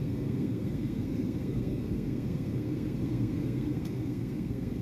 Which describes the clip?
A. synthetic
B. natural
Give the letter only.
A